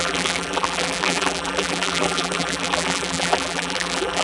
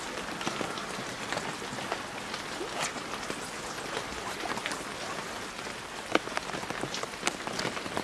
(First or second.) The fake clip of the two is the first